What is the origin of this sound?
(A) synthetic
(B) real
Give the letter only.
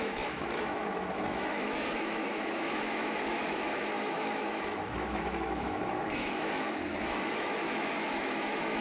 A